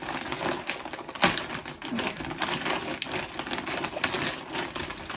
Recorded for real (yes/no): yes